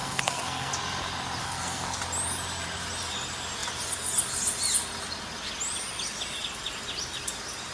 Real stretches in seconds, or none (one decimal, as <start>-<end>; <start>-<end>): 0.7-1.4; 2.0-7.7